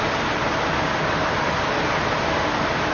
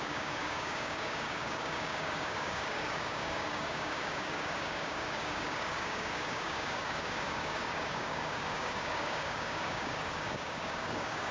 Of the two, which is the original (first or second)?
first